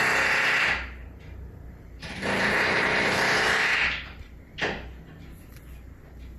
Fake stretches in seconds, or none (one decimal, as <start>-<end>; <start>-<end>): 1.0-4.4